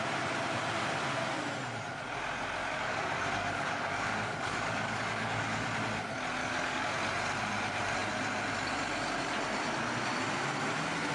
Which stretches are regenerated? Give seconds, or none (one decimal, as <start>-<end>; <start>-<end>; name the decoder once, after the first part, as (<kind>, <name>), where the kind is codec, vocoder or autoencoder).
2.6-5.7 (codec, DAC); 6.4-6.9